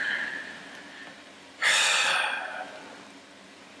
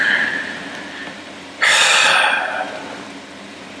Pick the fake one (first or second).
second